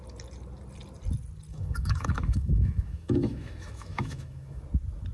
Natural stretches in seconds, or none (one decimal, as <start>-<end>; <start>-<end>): 0.0-1.5; 4.6-5.1

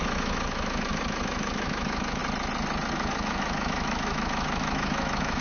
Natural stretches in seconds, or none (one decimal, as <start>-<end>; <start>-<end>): 2.2-2.9

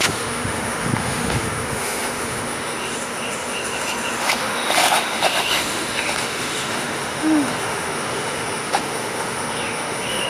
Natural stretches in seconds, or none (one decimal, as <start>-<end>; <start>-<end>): none

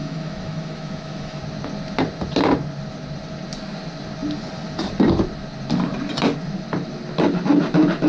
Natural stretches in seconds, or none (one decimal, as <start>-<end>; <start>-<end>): 1.4-8.1